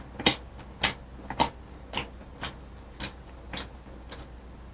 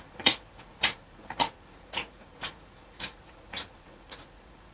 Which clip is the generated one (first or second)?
second